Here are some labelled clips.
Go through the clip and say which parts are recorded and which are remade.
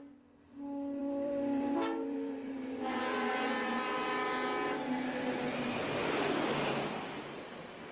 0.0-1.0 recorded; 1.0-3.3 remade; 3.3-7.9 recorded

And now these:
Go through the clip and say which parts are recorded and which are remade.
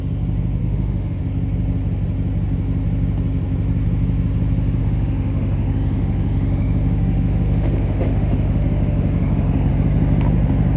0.0-0.6 recorded; 0.6-1.2 remade; 1.2-4.8 recorded; 4.8-9.7 remade; 9.7-10.8 recorded